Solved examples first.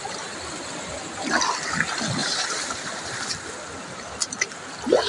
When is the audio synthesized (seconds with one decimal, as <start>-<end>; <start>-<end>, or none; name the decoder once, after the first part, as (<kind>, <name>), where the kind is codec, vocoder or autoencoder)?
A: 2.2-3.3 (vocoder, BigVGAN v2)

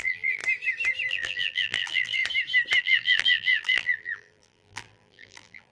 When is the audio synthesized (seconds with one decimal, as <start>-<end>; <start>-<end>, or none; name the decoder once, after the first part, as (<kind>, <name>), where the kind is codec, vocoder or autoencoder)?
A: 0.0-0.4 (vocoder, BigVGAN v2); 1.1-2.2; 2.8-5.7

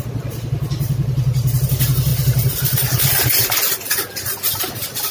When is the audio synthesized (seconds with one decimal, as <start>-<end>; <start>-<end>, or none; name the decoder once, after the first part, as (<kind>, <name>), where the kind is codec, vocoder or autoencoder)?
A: 2.1-5.1 (vocoder, BigVGAN v2)

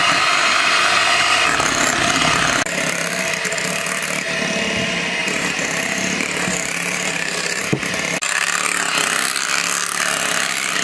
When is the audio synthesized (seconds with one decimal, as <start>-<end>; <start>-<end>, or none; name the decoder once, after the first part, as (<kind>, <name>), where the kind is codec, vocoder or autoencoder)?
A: 5.2-7.6 (vocoder, BigVGAN v2)

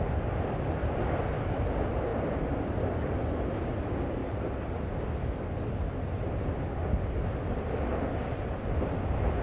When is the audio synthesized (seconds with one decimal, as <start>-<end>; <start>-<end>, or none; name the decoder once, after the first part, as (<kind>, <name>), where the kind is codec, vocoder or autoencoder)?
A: 0.8-1.6 (vocoder, BigVGAN v2); 2.1-2.7

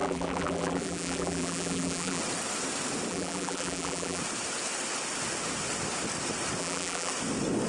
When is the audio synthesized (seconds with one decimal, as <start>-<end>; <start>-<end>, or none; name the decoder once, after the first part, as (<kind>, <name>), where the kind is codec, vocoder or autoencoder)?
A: 0.0-2.2 (vocoder, BigVGAN v2); 3.1-4.2; 6.6-7.1

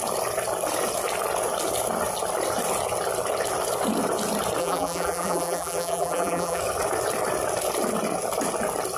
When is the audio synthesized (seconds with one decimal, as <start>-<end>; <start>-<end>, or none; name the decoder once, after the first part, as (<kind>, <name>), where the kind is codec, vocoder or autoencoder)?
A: 4.6-6.6 (vocoder, BigVGAN v2)

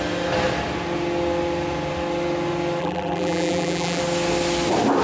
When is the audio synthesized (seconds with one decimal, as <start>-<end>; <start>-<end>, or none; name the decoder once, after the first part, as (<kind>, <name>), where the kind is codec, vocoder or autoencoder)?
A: 2.8-4.0 (vocoder, BigVGAN v2)